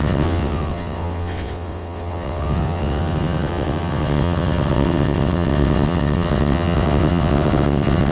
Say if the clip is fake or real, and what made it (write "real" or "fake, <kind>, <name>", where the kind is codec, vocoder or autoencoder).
fake, vocoder, WaveNeXt